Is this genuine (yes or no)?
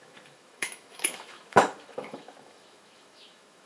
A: no